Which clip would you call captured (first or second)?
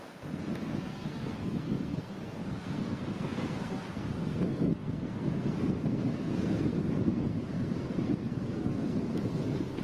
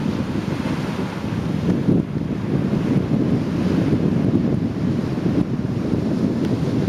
second